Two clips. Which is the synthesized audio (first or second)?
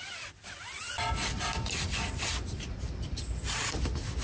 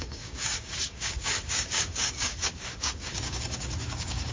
second